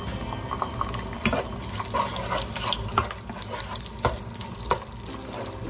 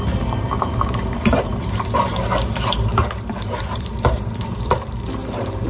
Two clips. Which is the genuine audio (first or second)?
first